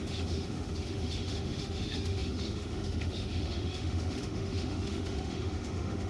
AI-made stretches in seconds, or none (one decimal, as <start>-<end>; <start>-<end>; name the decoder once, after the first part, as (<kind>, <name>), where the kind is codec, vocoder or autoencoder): 0.0-6.1 (autoencoder, DAC-VAE)